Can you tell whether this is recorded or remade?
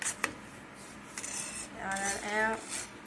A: recorded